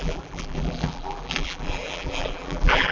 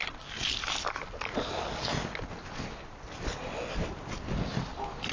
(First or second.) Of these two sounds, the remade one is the first